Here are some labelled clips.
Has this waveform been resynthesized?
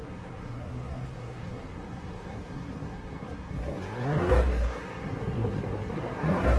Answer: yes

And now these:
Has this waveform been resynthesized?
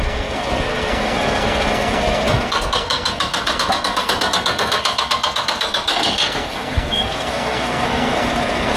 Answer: yes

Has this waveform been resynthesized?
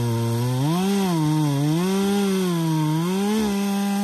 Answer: no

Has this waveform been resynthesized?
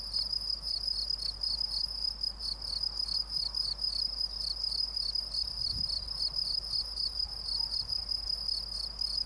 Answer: no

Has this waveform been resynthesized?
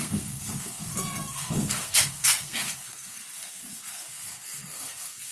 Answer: yes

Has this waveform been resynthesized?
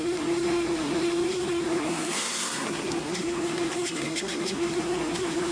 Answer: yes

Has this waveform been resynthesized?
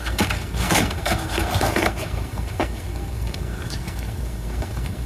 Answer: yes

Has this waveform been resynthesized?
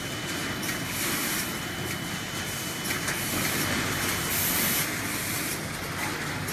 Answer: no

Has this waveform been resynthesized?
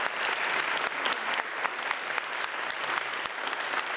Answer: no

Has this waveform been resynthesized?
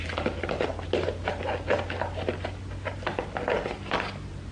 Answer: no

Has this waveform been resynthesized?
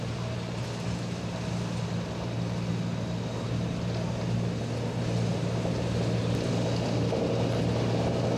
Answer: no